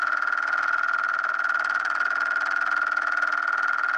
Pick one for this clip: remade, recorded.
recorded